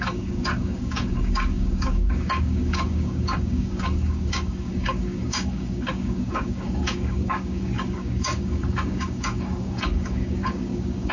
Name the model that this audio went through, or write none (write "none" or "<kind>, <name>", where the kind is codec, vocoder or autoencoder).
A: codec, DAC